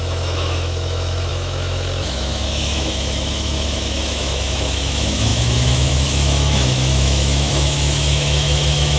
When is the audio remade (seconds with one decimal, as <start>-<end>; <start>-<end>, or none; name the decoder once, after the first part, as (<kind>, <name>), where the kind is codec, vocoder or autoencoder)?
0.0-9.0 (autoencoder, DAC-VAE)